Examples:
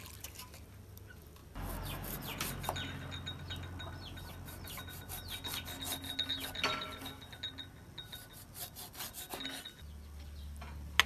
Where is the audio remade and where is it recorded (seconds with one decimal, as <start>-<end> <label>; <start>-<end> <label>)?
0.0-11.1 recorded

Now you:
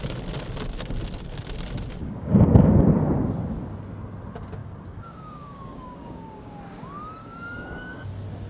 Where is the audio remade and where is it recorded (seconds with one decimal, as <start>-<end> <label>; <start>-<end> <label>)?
0.0-2.0 recorded; 2.0-2.9 remade; 2.9-4.6 recorded; 4.6-6.6 remade; 6.6-7.2 recorded; 7.2-8.1 remade; 8.1-8.5 recorded

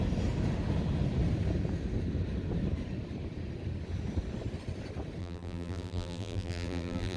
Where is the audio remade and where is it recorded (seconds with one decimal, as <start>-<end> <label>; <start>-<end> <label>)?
0.0-5.2 recorded; 5.2-7.2 remade